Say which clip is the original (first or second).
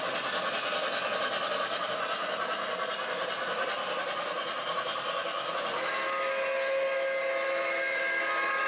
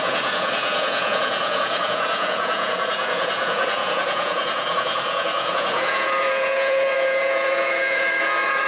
first